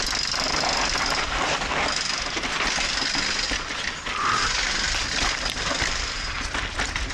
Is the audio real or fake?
real